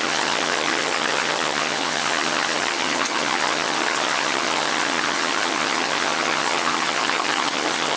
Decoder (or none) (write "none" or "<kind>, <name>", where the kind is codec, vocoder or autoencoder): vocoder, HiFi-GAN